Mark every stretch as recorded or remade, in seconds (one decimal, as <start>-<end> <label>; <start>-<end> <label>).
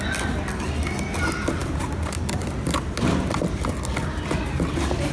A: 0.0-5.1 recorded